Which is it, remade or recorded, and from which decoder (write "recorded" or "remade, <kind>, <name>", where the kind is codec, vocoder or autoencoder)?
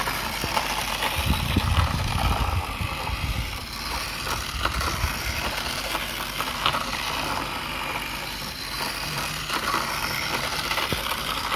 remade, vocoder, BigVGAN v2